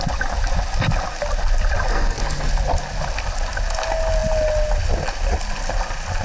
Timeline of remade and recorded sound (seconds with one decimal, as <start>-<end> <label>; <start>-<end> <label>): 0.0-1.9 recorded; 1.9-2.5 remade; 2.5-6.2 recorded